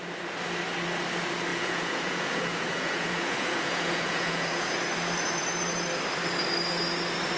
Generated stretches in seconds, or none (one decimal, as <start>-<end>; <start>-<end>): 1.5-4.8